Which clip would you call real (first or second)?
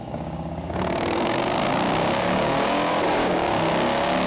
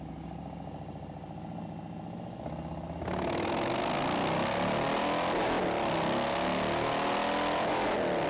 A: second